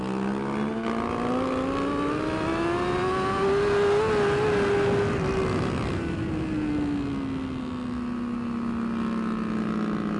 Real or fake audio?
real